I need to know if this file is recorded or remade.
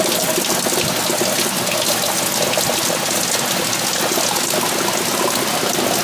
recorded